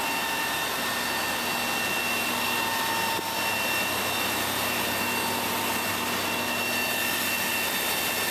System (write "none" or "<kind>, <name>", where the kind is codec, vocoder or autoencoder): none